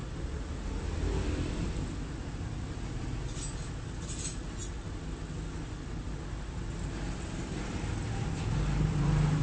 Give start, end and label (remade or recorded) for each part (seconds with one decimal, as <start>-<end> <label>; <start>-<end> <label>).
0.0-9.4 recorded